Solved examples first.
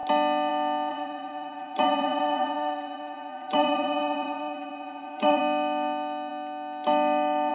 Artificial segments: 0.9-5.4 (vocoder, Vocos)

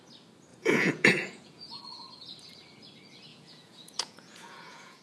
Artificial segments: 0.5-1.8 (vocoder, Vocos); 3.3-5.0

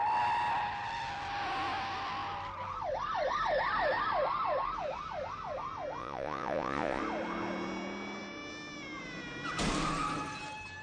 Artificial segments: 6.0-7.0 (vocoder, Vocos)